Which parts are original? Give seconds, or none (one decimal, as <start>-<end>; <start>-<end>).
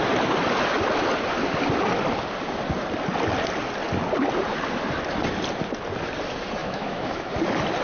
0.0-6.6; 7.3-7.8